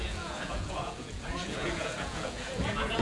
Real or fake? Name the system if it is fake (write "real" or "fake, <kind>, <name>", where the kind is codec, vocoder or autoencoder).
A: fake, vocoder, Vocos